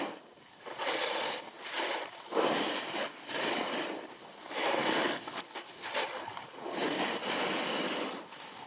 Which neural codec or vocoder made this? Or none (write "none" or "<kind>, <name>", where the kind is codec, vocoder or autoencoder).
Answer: none